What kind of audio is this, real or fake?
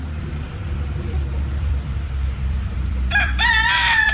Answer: fake